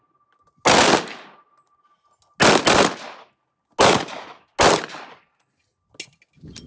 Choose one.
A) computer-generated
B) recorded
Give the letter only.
B